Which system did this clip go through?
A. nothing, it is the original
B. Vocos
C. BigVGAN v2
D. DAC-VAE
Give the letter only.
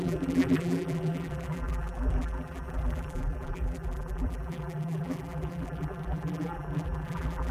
C